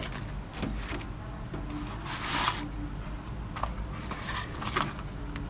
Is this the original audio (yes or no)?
yes